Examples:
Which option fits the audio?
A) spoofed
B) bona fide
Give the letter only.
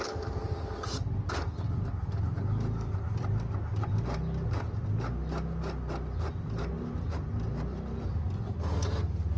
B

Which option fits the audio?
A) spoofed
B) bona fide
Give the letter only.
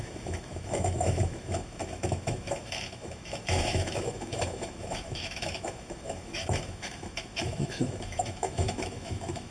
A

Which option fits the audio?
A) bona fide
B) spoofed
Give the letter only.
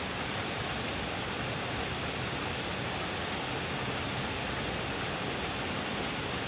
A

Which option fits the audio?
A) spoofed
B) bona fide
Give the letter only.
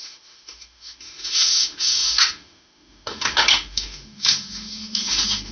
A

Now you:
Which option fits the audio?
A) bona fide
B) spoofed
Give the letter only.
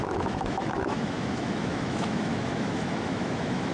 B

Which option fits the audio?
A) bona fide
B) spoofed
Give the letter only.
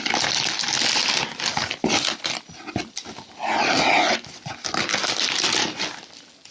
A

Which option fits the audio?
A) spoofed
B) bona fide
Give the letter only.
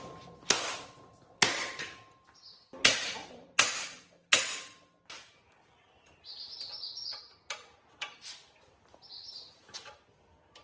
B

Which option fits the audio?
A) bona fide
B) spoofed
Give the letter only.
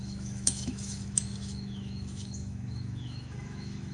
B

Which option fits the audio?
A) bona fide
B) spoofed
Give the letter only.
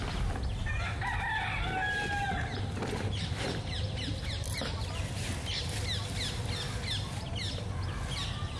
A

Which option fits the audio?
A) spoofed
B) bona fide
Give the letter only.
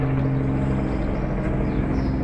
B